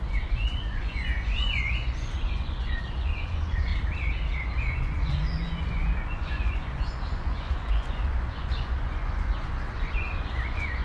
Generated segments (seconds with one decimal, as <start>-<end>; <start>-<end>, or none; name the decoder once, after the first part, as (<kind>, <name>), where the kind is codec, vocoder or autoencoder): 0.0-3.7 (vocoder, Vocos); 4.6-10.8